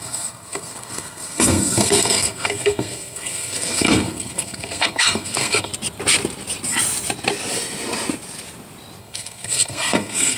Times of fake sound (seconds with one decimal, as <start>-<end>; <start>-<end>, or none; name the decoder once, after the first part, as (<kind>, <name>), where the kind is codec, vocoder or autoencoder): 0.0-5.7 (codec, SNAC); 9.0-10.4

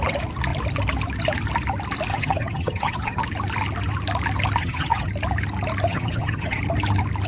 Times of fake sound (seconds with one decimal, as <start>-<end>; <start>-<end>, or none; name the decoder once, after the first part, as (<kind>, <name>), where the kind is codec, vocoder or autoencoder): 2.1-3.2 (vocoder, HiFi-GAN); 4.6-5.1; 5.9-6.6

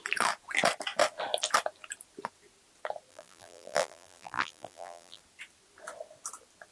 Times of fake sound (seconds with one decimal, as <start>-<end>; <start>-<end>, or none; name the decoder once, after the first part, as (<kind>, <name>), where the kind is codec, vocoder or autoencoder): 3.1-5.2 (vocoder, BigVGAN v2)

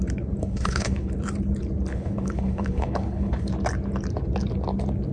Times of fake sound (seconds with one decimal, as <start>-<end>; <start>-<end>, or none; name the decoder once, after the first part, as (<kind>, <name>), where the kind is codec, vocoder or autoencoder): 0.4-1.1 (codec, HILCodec); 1.9-3.5